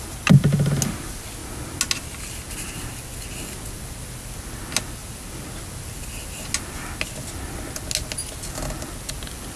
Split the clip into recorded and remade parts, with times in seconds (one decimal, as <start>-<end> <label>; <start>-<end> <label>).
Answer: 0.0-9.6 recorded